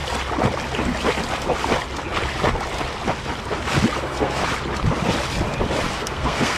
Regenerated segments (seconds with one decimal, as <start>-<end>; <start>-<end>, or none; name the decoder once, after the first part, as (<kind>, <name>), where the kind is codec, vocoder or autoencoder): 4.0-4.4 (codec, SNAC); 5.9-6.6